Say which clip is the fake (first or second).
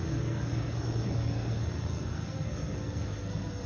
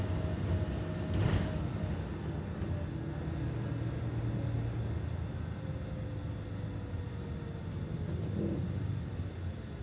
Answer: first